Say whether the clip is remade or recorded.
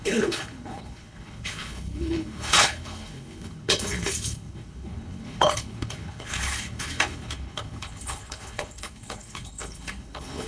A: remade